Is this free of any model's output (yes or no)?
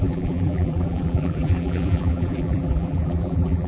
no